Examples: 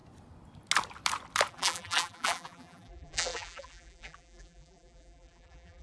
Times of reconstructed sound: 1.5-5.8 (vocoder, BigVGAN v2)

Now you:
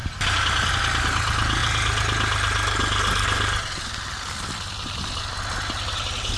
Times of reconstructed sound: none

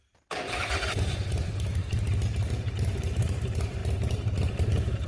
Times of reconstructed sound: 0.0-3.8 (vocoder, BigVGAN v2); 4.5-5.1

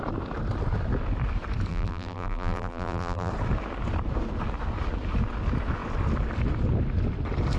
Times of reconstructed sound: 1.7-3.3 (vocoder, BigVGAN v2)

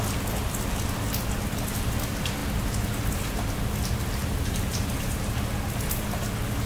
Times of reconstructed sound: 4.2-5.3 (vocoder, BigVGAN v2)